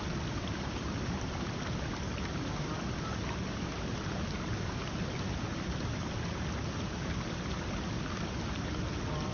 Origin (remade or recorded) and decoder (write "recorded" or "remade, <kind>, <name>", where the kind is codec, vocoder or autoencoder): recorded